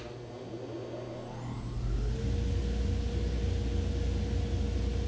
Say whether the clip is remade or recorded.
recorded